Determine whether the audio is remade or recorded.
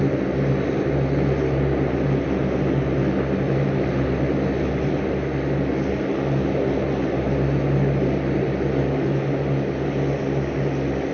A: recorded